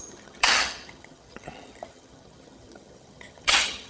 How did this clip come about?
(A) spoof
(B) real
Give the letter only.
A